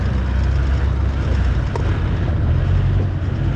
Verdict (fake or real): real